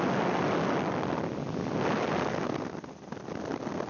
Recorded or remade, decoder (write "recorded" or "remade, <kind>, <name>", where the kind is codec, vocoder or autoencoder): recorded